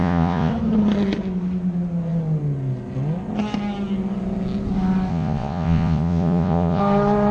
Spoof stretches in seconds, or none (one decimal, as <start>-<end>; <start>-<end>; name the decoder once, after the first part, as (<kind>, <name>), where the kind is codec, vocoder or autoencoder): 0.0-0.5 (vocoder, Vocos); 5.1-6.8